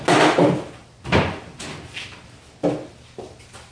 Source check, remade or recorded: recorded